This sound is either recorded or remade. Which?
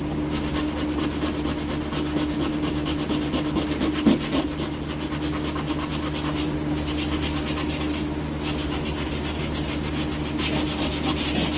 recorded